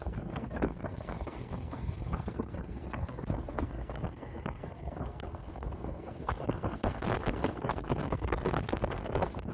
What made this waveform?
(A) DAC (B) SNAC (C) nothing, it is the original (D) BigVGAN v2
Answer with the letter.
B